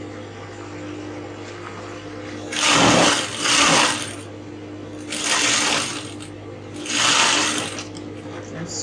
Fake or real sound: real